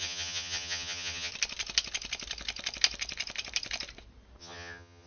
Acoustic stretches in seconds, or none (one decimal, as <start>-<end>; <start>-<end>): 1.3-4.4